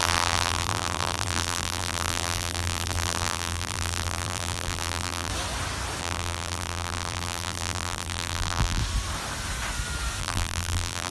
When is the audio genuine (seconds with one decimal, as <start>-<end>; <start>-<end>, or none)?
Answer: 5.3-6.0; 8.8-10.2